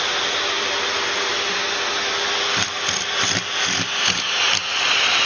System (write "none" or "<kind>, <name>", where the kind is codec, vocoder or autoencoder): none